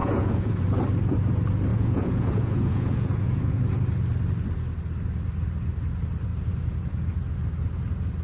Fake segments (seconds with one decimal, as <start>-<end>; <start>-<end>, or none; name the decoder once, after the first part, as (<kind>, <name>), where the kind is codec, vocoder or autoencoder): 0.0-0.6 (vocoder, Vocos); 1.7-3.5